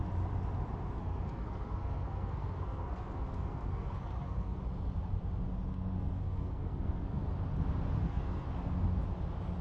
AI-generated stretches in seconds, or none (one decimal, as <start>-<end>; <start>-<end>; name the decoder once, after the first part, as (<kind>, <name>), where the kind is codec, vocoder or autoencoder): 1.0-4.6 (codec, SNAC); 5.7-7.3; 8.0-8.5